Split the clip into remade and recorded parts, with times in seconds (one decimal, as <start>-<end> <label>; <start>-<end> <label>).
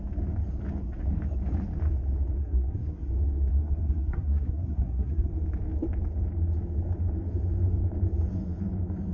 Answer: 0.0-2.4 recorded; 2.4-3.1 remade; 3.1-3.5 recorded; 3.5-5.3 remade; 5.3-9.1 recorded